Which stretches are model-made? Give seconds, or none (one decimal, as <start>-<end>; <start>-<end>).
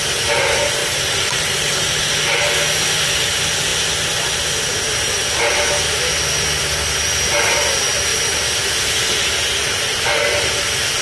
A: 0.8-2.1; 8.1-8.6